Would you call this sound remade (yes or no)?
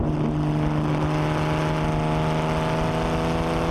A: no